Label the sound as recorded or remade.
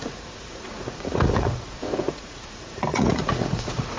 remade